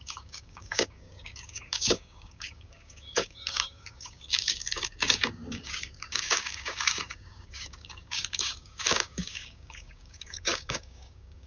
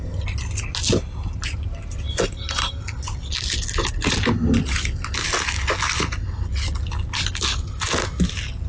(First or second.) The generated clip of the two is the first